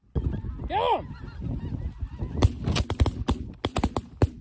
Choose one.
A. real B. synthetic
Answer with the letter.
A